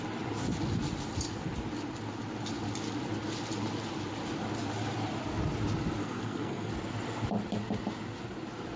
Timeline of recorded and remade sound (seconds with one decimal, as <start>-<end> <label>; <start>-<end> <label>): 0.0-6.0 recorded; 6.0-6.7 remade; 6.7-8.8 recorded